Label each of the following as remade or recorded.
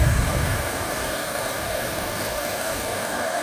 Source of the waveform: remade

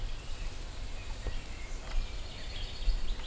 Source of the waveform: recorded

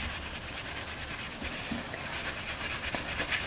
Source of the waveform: recorded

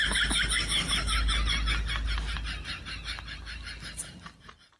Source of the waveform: recorded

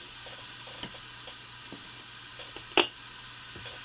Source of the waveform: recorded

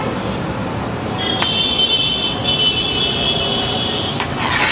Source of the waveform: recorded